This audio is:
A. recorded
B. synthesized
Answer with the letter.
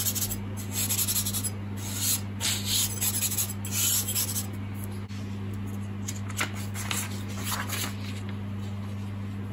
A